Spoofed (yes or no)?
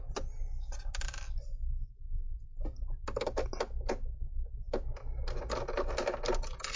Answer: no